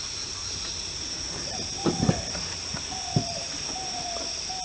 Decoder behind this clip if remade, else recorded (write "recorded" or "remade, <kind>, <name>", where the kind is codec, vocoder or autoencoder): recorded